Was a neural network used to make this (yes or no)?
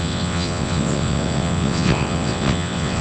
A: yes